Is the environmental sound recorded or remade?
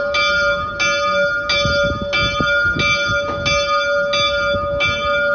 recorded